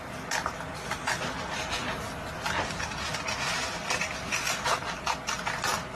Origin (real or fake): real